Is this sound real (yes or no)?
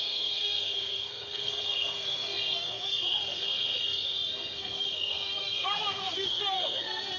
no